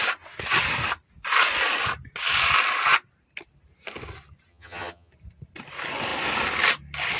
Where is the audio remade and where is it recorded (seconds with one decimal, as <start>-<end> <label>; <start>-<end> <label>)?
0.0-4.5 recorded; 4.5-5.1 remade; 5.1-7.2 recorded